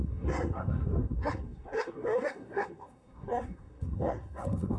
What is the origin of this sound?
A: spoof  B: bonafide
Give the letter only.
A